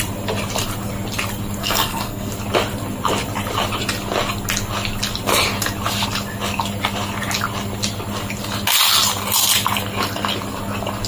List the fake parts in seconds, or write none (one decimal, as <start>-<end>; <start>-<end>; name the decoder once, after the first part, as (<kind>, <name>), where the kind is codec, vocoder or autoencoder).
1.6-2.3 (codec, SNAC)